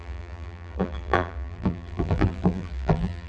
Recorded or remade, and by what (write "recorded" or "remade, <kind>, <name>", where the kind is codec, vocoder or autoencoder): remade, vocoder, BigVGAN v2